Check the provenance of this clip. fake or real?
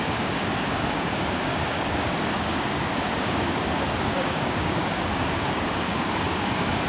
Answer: fake